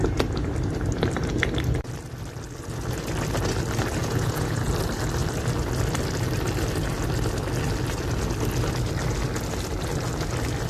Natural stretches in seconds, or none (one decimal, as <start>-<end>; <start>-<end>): 0.0-4.0; 4.7-10.7